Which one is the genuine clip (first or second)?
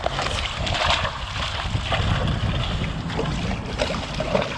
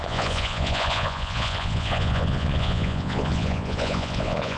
first